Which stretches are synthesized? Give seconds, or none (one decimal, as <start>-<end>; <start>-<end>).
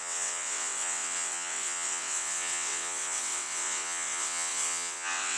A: 0.0-5.4